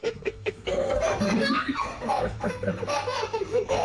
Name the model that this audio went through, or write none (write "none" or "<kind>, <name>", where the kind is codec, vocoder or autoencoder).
codec, SNAC